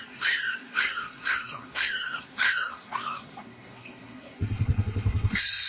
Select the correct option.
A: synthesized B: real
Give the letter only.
A